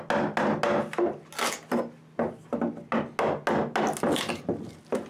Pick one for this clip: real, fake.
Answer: real